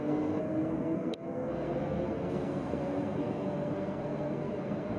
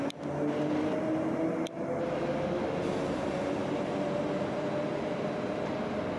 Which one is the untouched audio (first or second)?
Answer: second